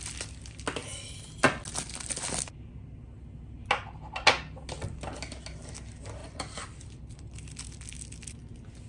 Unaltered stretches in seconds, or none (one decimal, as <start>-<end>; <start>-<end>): 0.0-6.2; 7.2-8.9